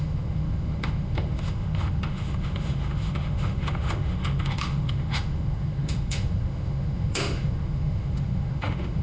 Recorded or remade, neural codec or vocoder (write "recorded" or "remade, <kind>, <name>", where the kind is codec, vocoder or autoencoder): remade, autoencoder, DAC-VAE